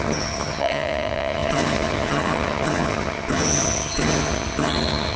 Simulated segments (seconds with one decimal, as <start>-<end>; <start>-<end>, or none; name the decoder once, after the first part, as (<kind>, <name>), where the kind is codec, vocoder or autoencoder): 0.0-5.2 (vocoder, HiFi-GAN)